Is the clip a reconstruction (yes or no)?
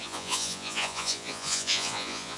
yes